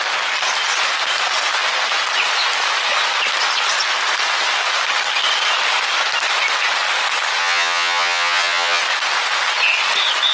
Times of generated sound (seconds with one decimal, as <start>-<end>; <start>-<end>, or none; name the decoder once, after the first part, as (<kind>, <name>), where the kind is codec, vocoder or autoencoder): 7.4-8.8 (vocoder, HiFi-GAN)